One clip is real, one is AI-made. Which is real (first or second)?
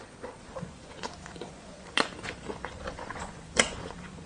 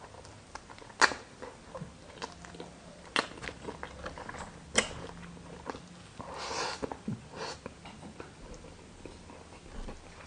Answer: second